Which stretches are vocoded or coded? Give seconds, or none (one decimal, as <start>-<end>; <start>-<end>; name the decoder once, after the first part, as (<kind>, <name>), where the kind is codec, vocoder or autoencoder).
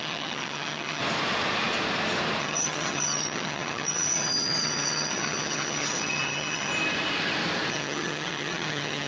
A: 0.0-1.0 (vocoder, HiFi-GAN); 2.4-6.7; 7.7-9.1